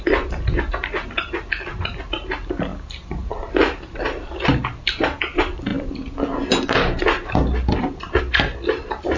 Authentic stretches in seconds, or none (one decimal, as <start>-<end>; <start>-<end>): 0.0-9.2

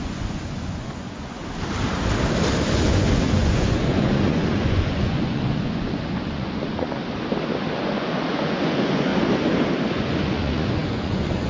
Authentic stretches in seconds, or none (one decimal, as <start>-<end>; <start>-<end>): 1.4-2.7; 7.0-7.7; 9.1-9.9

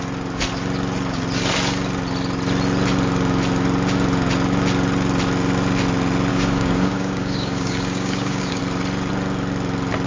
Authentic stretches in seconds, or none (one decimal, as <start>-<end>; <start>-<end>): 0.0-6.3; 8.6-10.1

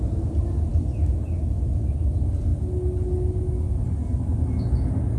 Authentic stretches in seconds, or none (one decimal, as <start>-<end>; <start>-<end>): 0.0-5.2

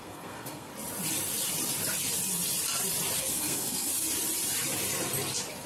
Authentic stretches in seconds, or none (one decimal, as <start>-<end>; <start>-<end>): 0.7-3.2; 3.9-5.7

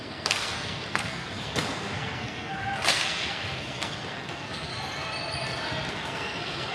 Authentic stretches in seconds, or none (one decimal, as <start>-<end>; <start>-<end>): 4.7-5.9

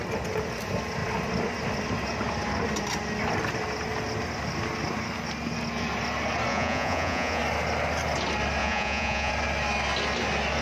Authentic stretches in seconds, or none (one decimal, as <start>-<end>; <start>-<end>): 0.0-6.5; 7.4-8.6; 9.3-10.6